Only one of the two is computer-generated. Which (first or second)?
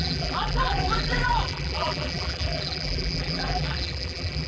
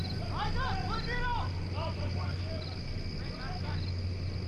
first